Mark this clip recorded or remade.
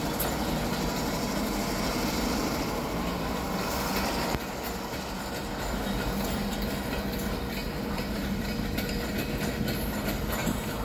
recorded